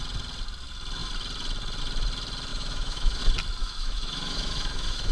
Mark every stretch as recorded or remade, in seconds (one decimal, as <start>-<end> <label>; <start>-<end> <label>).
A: 0.0-2.5 recorded; 2.5-3.2 remade; 3.2-3.6 recorded; 3.6-5.1 remade